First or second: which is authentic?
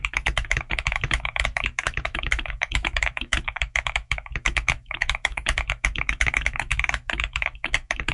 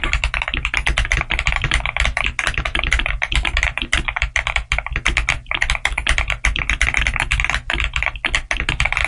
second